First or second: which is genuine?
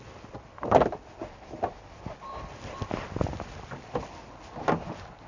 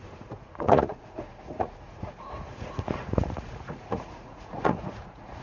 first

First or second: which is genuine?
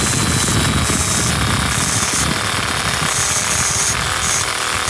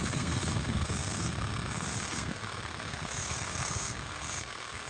first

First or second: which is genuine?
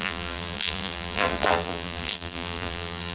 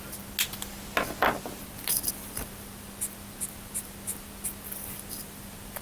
second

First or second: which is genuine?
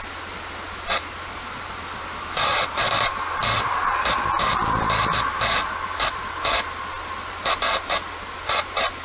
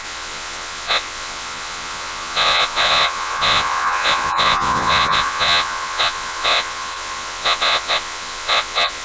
first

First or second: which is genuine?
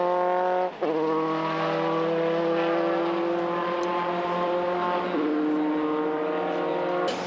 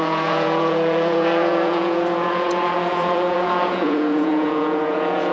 first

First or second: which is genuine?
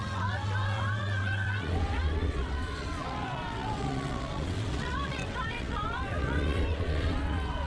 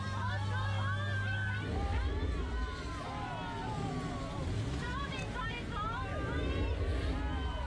second